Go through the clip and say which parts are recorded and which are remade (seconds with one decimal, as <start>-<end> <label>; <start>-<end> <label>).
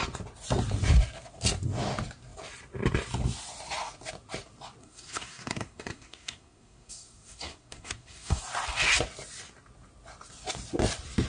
0.0-4.8 recorded; 4.8-8.4 remade; 8.4-11.3 recorded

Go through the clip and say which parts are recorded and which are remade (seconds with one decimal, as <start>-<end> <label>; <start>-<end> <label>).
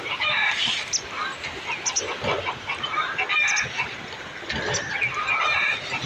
0.0-6.1 recorded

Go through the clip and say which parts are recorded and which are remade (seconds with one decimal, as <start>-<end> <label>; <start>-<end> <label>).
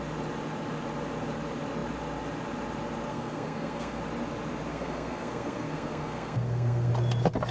0.0-3.1 recorded; 3.1-4.0 remade; 4.0-4.7 recorded; 4.7-6.9 remade; 6.9-7.5 recorded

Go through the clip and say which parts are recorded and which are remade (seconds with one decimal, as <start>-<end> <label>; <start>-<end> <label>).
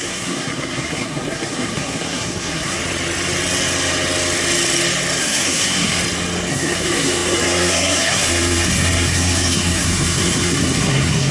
0.0-2.8 remade; 2.8-5.2 recorded; 5.2-6.0 remade; 6.0-6.5 recorded; 6.5-11.3 remade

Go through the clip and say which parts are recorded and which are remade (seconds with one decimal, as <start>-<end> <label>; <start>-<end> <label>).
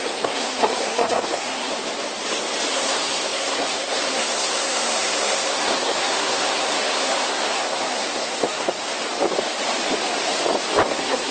0.0-1.7 remade; 1.7-2.7 recorded; 2.7-8.9 remade; 8.9-10.9 recorded; 10.9-11.3 remade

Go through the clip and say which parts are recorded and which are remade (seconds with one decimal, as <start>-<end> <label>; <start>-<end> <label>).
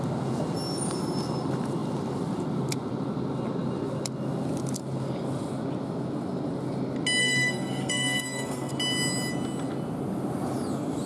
0.0-7.2 recorded; 7.2-8.7 remade; 8.7-11.1 recorded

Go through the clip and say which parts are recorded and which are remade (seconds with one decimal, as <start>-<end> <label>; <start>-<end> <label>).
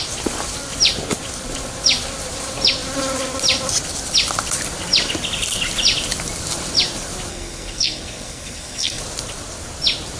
0.0-7.3 recorded; 7.3-9.0 remade; 9.0-10.2 recorded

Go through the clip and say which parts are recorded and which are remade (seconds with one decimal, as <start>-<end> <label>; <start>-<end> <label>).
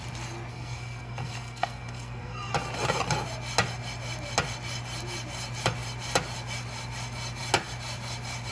0.0-0.5 recorded; 0.5-2.5 remade; 2.5-8.5 recorded